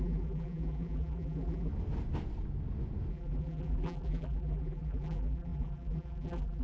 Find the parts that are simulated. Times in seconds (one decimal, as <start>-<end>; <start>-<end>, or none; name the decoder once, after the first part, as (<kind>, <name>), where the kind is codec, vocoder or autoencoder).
0.0-1.7 (vocoder, BigVGAN v2); 3.1-6.6